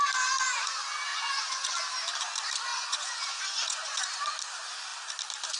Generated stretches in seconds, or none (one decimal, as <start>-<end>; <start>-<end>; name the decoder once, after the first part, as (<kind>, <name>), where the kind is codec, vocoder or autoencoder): 1.1-1.7 (vocoder, Vocos); 2.7-4.1